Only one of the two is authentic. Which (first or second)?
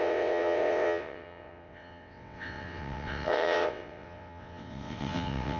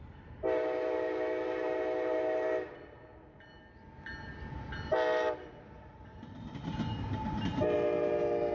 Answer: second